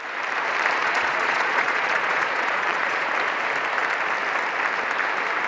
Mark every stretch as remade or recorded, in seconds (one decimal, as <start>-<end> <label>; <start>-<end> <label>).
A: 0.0-0.8 recorded; 0.8-3.1 remade; 3.1-5.5 recorded